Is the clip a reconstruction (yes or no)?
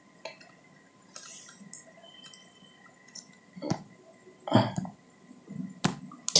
no